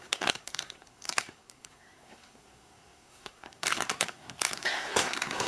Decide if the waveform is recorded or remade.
remade